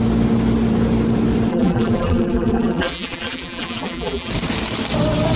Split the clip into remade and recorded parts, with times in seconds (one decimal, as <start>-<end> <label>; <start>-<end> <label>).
0.0-1.5 recorded; 1.5-4.3 remade; 4.3-5.4 recorded